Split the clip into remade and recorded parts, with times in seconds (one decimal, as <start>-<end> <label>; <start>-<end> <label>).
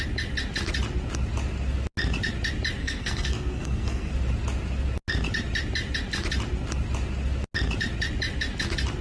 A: 0.0-2.8 recorded; 2.8-4.1 remade; 4.1-9.0 recorded